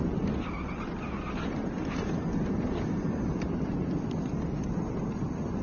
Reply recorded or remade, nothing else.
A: recorded